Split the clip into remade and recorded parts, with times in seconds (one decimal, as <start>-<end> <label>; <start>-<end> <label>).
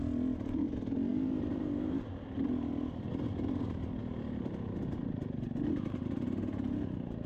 0.0-1.1 recorded; 1.1-2.5 remade; 2.5-7.3 recorded